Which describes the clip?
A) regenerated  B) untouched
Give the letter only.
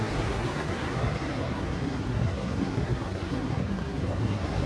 A